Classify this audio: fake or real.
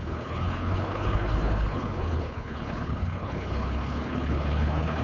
fake